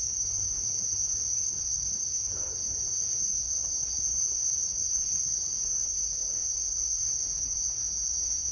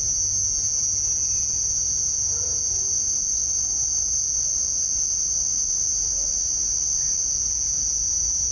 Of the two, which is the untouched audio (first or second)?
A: second